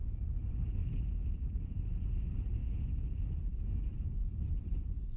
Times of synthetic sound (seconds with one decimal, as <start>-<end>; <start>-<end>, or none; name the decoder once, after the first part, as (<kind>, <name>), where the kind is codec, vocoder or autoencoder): 0.0-0.8 (vocoder, Vocos); 1.6-4.2